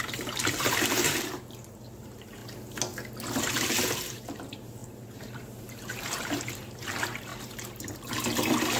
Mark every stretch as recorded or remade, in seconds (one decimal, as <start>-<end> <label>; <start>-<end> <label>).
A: 0.0-2.4 remade; 2.4-3.4 recorded; 3.4-7.3 remade; 7.3-8.8 recorded